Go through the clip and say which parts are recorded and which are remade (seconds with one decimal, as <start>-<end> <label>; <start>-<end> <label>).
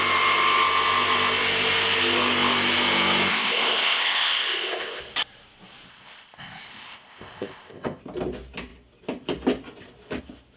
0.0-3.3 recorded; 3.3-5.0 remade; 5.0-5.9 recorded; 5.9-8.0 remade; 8.0-10.6 recorded